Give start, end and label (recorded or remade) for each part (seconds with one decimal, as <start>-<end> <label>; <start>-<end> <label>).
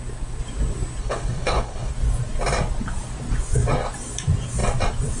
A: 0.0-1.0 recorded; 1.0-1.9 remade; 1.9-5.2 recorded